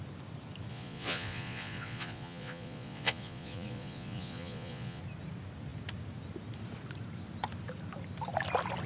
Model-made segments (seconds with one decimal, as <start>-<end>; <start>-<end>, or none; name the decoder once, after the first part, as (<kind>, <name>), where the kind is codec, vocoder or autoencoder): 0.7-5.0 (vocoder, Vocos)